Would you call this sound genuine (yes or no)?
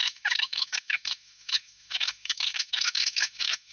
no